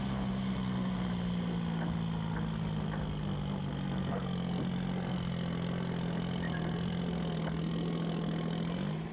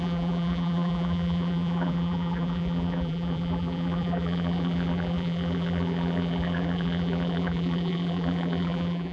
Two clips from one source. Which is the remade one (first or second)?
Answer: second